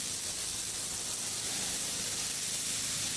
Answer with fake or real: real